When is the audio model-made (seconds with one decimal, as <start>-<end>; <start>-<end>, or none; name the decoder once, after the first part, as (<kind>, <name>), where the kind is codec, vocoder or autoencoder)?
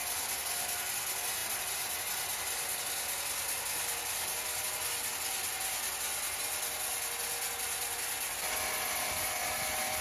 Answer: none